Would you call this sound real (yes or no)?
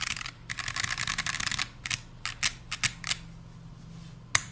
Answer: yes